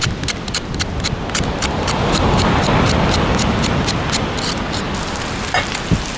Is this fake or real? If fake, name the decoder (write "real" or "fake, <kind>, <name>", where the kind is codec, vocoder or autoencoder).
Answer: real